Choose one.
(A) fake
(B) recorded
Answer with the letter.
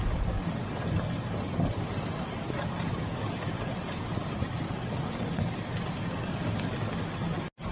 B